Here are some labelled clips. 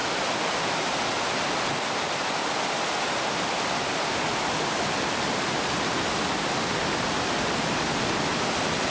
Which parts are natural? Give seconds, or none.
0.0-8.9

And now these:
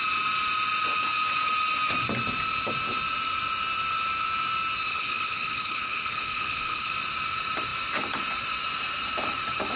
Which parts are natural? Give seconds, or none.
0.0-4.9; 6.9-9.8

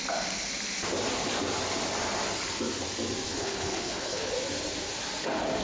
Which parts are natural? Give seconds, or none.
0.0-3.3; 4.3-5.6

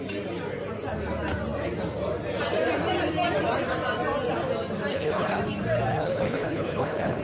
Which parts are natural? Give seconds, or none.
0.0-4.9; 5.4-5.9